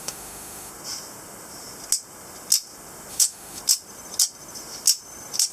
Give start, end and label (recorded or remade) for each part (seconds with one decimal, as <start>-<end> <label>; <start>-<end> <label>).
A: 0.0-0.7 remade; 0.7-3.1 recorded; 3.1-3.6 remade; 3.6-5.5 recorded